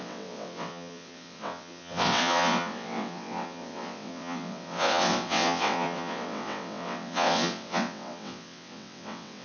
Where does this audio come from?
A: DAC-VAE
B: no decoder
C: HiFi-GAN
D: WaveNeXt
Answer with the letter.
D